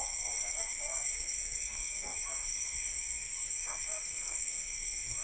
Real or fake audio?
fake